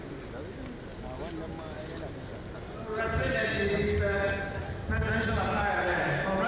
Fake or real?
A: real